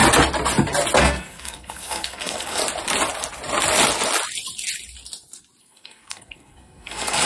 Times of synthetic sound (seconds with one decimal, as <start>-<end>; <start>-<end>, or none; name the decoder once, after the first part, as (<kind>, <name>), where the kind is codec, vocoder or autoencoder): 1.0-2.6 (codec, SNAC); 5.6-7.3